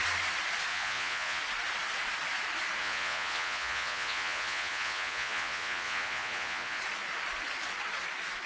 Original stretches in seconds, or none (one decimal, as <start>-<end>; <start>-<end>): 0.0-0.7; 1.4-2.8; 6.8-8.5